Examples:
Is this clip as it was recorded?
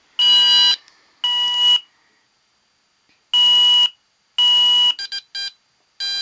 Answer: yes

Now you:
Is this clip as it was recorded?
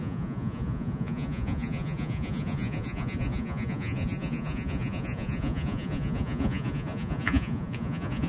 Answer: no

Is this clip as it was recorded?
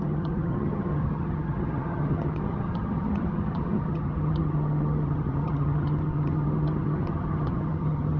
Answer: no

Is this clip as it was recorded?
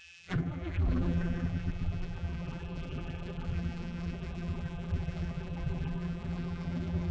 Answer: no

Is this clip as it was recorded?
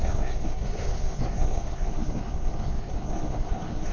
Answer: no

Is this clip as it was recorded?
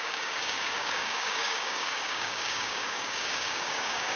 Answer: no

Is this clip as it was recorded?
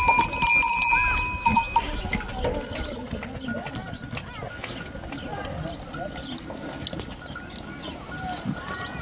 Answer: yes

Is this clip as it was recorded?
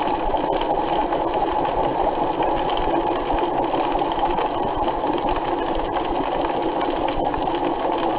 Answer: no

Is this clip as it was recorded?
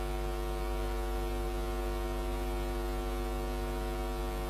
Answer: yes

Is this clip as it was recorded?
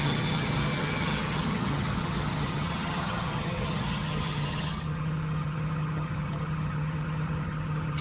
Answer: no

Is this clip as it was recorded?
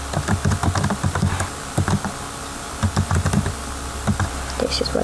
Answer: yes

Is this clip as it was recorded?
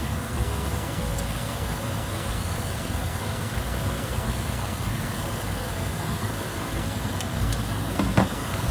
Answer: no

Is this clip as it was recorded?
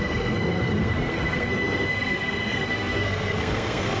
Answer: no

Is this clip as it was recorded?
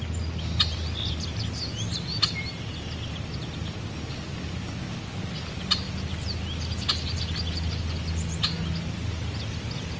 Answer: yes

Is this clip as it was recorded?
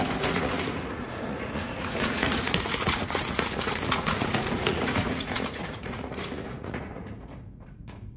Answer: no